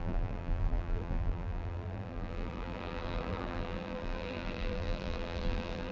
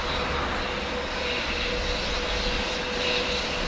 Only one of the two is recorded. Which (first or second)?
second